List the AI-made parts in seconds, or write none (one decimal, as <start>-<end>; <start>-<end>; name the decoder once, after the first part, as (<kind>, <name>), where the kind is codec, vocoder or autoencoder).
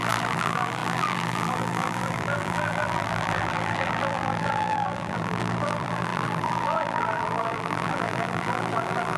0.0-9.2 (vocoder, BigVGAN v2)